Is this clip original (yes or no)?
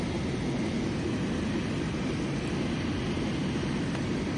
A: no